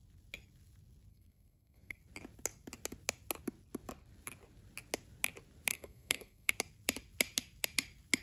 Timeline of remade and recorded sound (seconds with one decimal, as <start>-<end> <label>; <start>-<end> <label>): 0.0-1.1 recorded; 1.1-2.0 remade; 2.0-5.7 recorded; 5.7-6.5 remade; 6.5-8.2 recorded